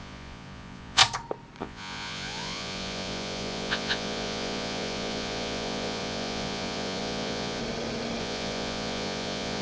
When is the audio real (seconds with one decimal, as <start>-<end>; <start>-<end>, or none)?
1.0-1.6; 7.6-8.2